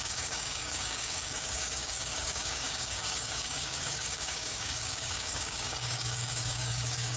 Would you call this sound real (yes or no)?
no